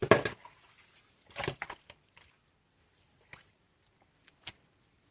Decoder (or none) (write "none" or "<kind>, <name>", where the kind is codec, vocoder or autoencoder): none